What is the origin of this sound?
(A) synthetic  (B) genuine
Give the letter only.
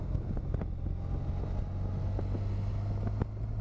B